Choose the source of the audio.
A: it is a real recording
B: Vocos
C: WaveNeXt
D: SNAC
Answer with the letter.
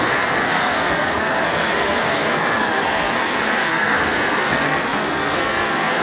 D